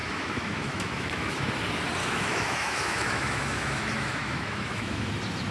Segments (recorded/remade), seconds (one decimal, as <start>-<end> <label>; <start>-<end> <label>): 0.0-1.5 remade; 1.5-2.0 recorded; 2.0-5.1 remade; 5.1-5.5 recorded